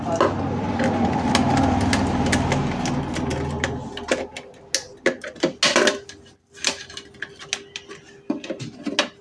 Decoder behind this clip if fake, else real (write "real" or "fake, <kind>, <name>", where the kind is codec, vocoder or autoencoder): real